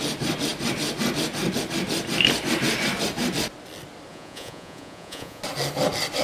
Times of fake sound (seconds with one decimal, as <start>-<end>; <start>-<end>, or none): 4.1-5.4